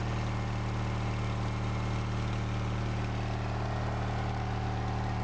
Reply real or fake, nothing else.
real